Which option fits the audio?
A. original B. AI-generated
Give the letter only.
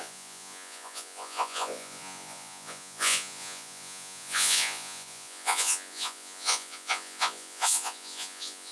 B